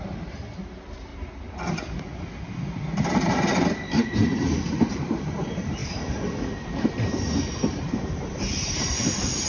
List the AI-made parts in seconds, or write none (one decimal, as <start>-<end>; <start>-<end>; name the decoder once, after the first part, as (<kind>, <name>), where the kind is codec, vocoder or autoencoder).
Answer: 0.0-1.1 (vocoder, BigVGAN v2); 2.9-9.5